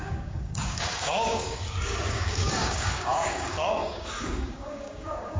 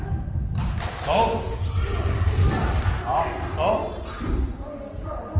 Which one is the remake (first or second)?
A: first